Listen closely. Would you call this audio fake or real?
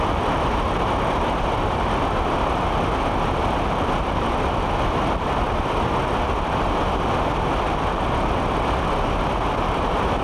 real